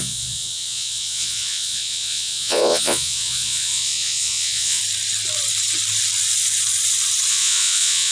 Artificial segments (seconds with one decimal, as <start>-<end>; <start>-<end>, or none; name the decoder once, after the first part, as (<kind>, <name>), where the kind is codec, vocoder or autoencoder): 0.0-4.8 (vocoder, Vocos); 7.3-8.1

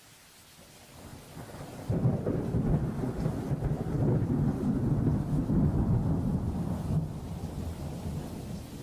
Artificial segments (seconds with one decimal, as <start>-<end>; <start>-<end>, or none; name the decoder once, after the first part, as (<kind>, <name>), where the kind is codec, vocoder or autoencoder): none

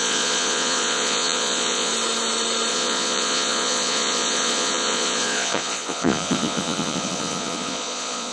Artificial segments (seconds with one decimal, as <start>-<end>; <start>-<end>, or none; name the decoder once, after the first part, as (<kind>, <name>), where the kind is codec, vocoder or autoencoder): 0.0-1.9 (vocoder, Vocos); 2.7-8.3

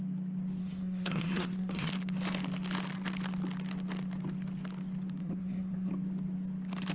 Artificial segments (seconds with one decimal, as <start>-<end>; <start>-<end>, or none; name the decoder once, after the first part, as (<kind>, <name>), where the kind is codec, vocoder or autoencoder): 0.6-1.9 (codec, SNAC); 5.2-5.9

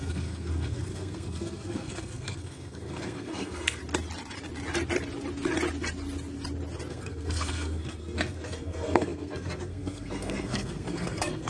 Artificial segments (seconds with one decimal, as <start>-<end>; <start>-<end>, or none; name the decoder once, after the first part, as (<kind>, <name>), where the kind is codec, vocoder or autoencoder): 0.0-3.8 (codec, SNAC); 6.9-11.5

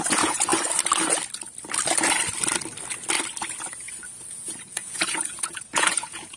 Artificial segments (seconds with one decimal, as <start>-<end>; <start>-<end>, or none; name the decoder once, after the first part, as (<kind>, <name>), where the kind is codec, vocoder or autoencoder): 0.0-0.5 (vocoder, Vocos); 4.3-6.4

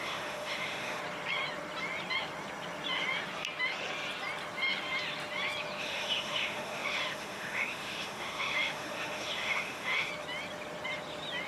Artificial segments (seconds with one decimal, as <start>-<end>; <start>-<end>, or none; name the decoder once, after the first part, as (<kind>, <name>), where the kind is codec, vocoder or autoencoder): 0.0-1.0 (autoencoder, DAC-VAE); 5.8-10.1